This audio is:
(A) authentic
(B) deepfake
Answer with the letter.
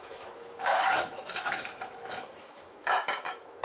B